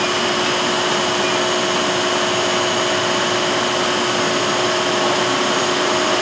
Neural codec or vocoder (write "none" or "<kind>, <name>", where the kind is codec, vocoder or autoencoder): none